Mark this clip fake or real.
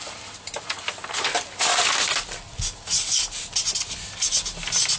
real